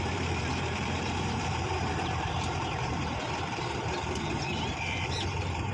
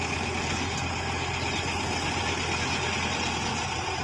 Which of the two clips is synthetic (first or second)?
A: first